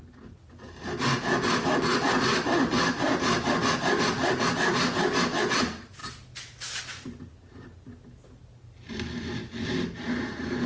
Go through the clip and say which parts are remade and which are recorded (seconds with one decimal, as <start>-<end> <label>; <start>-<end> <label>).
0.0-10.7 recorded